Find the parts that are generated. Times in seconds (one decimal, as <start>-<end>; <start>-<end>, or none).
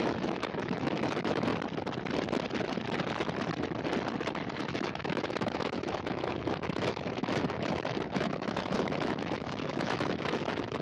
0.0-1.5; 4.6-10.8